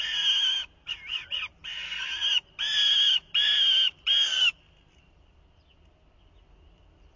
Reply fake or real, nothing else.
real